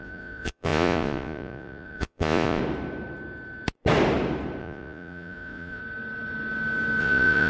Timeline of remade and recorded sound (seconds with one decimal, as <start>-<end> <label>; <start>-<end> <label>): 0.0-2.6 remade; 2.6-4.6 recorded; 4.6-5.8 remade; 5.8-7.0 recorded; 7.0-7.5 remade